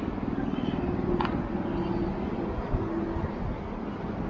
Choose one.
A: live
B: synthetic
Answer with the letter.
A